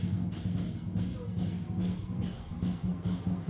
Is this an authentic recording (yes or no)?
no